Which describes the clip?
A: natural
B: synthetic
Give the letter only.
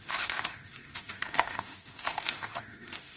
B